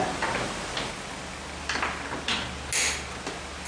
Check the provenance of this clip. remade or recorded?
recorded